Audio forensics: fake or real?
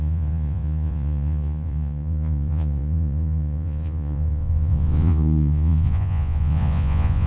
fake